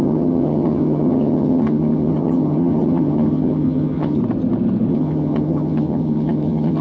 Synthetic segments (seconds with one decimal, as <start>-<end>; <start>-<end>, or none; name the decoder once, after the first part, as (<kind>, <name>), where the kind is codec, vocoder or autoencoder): 0.0-4.2 (vocoder, HiFi-GAN); 4.9-6.8